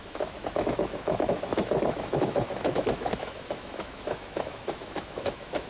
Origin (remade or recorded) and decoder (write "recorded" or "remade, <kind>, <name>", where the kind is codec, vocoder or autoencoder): remade, autoencoder, DAC-VAE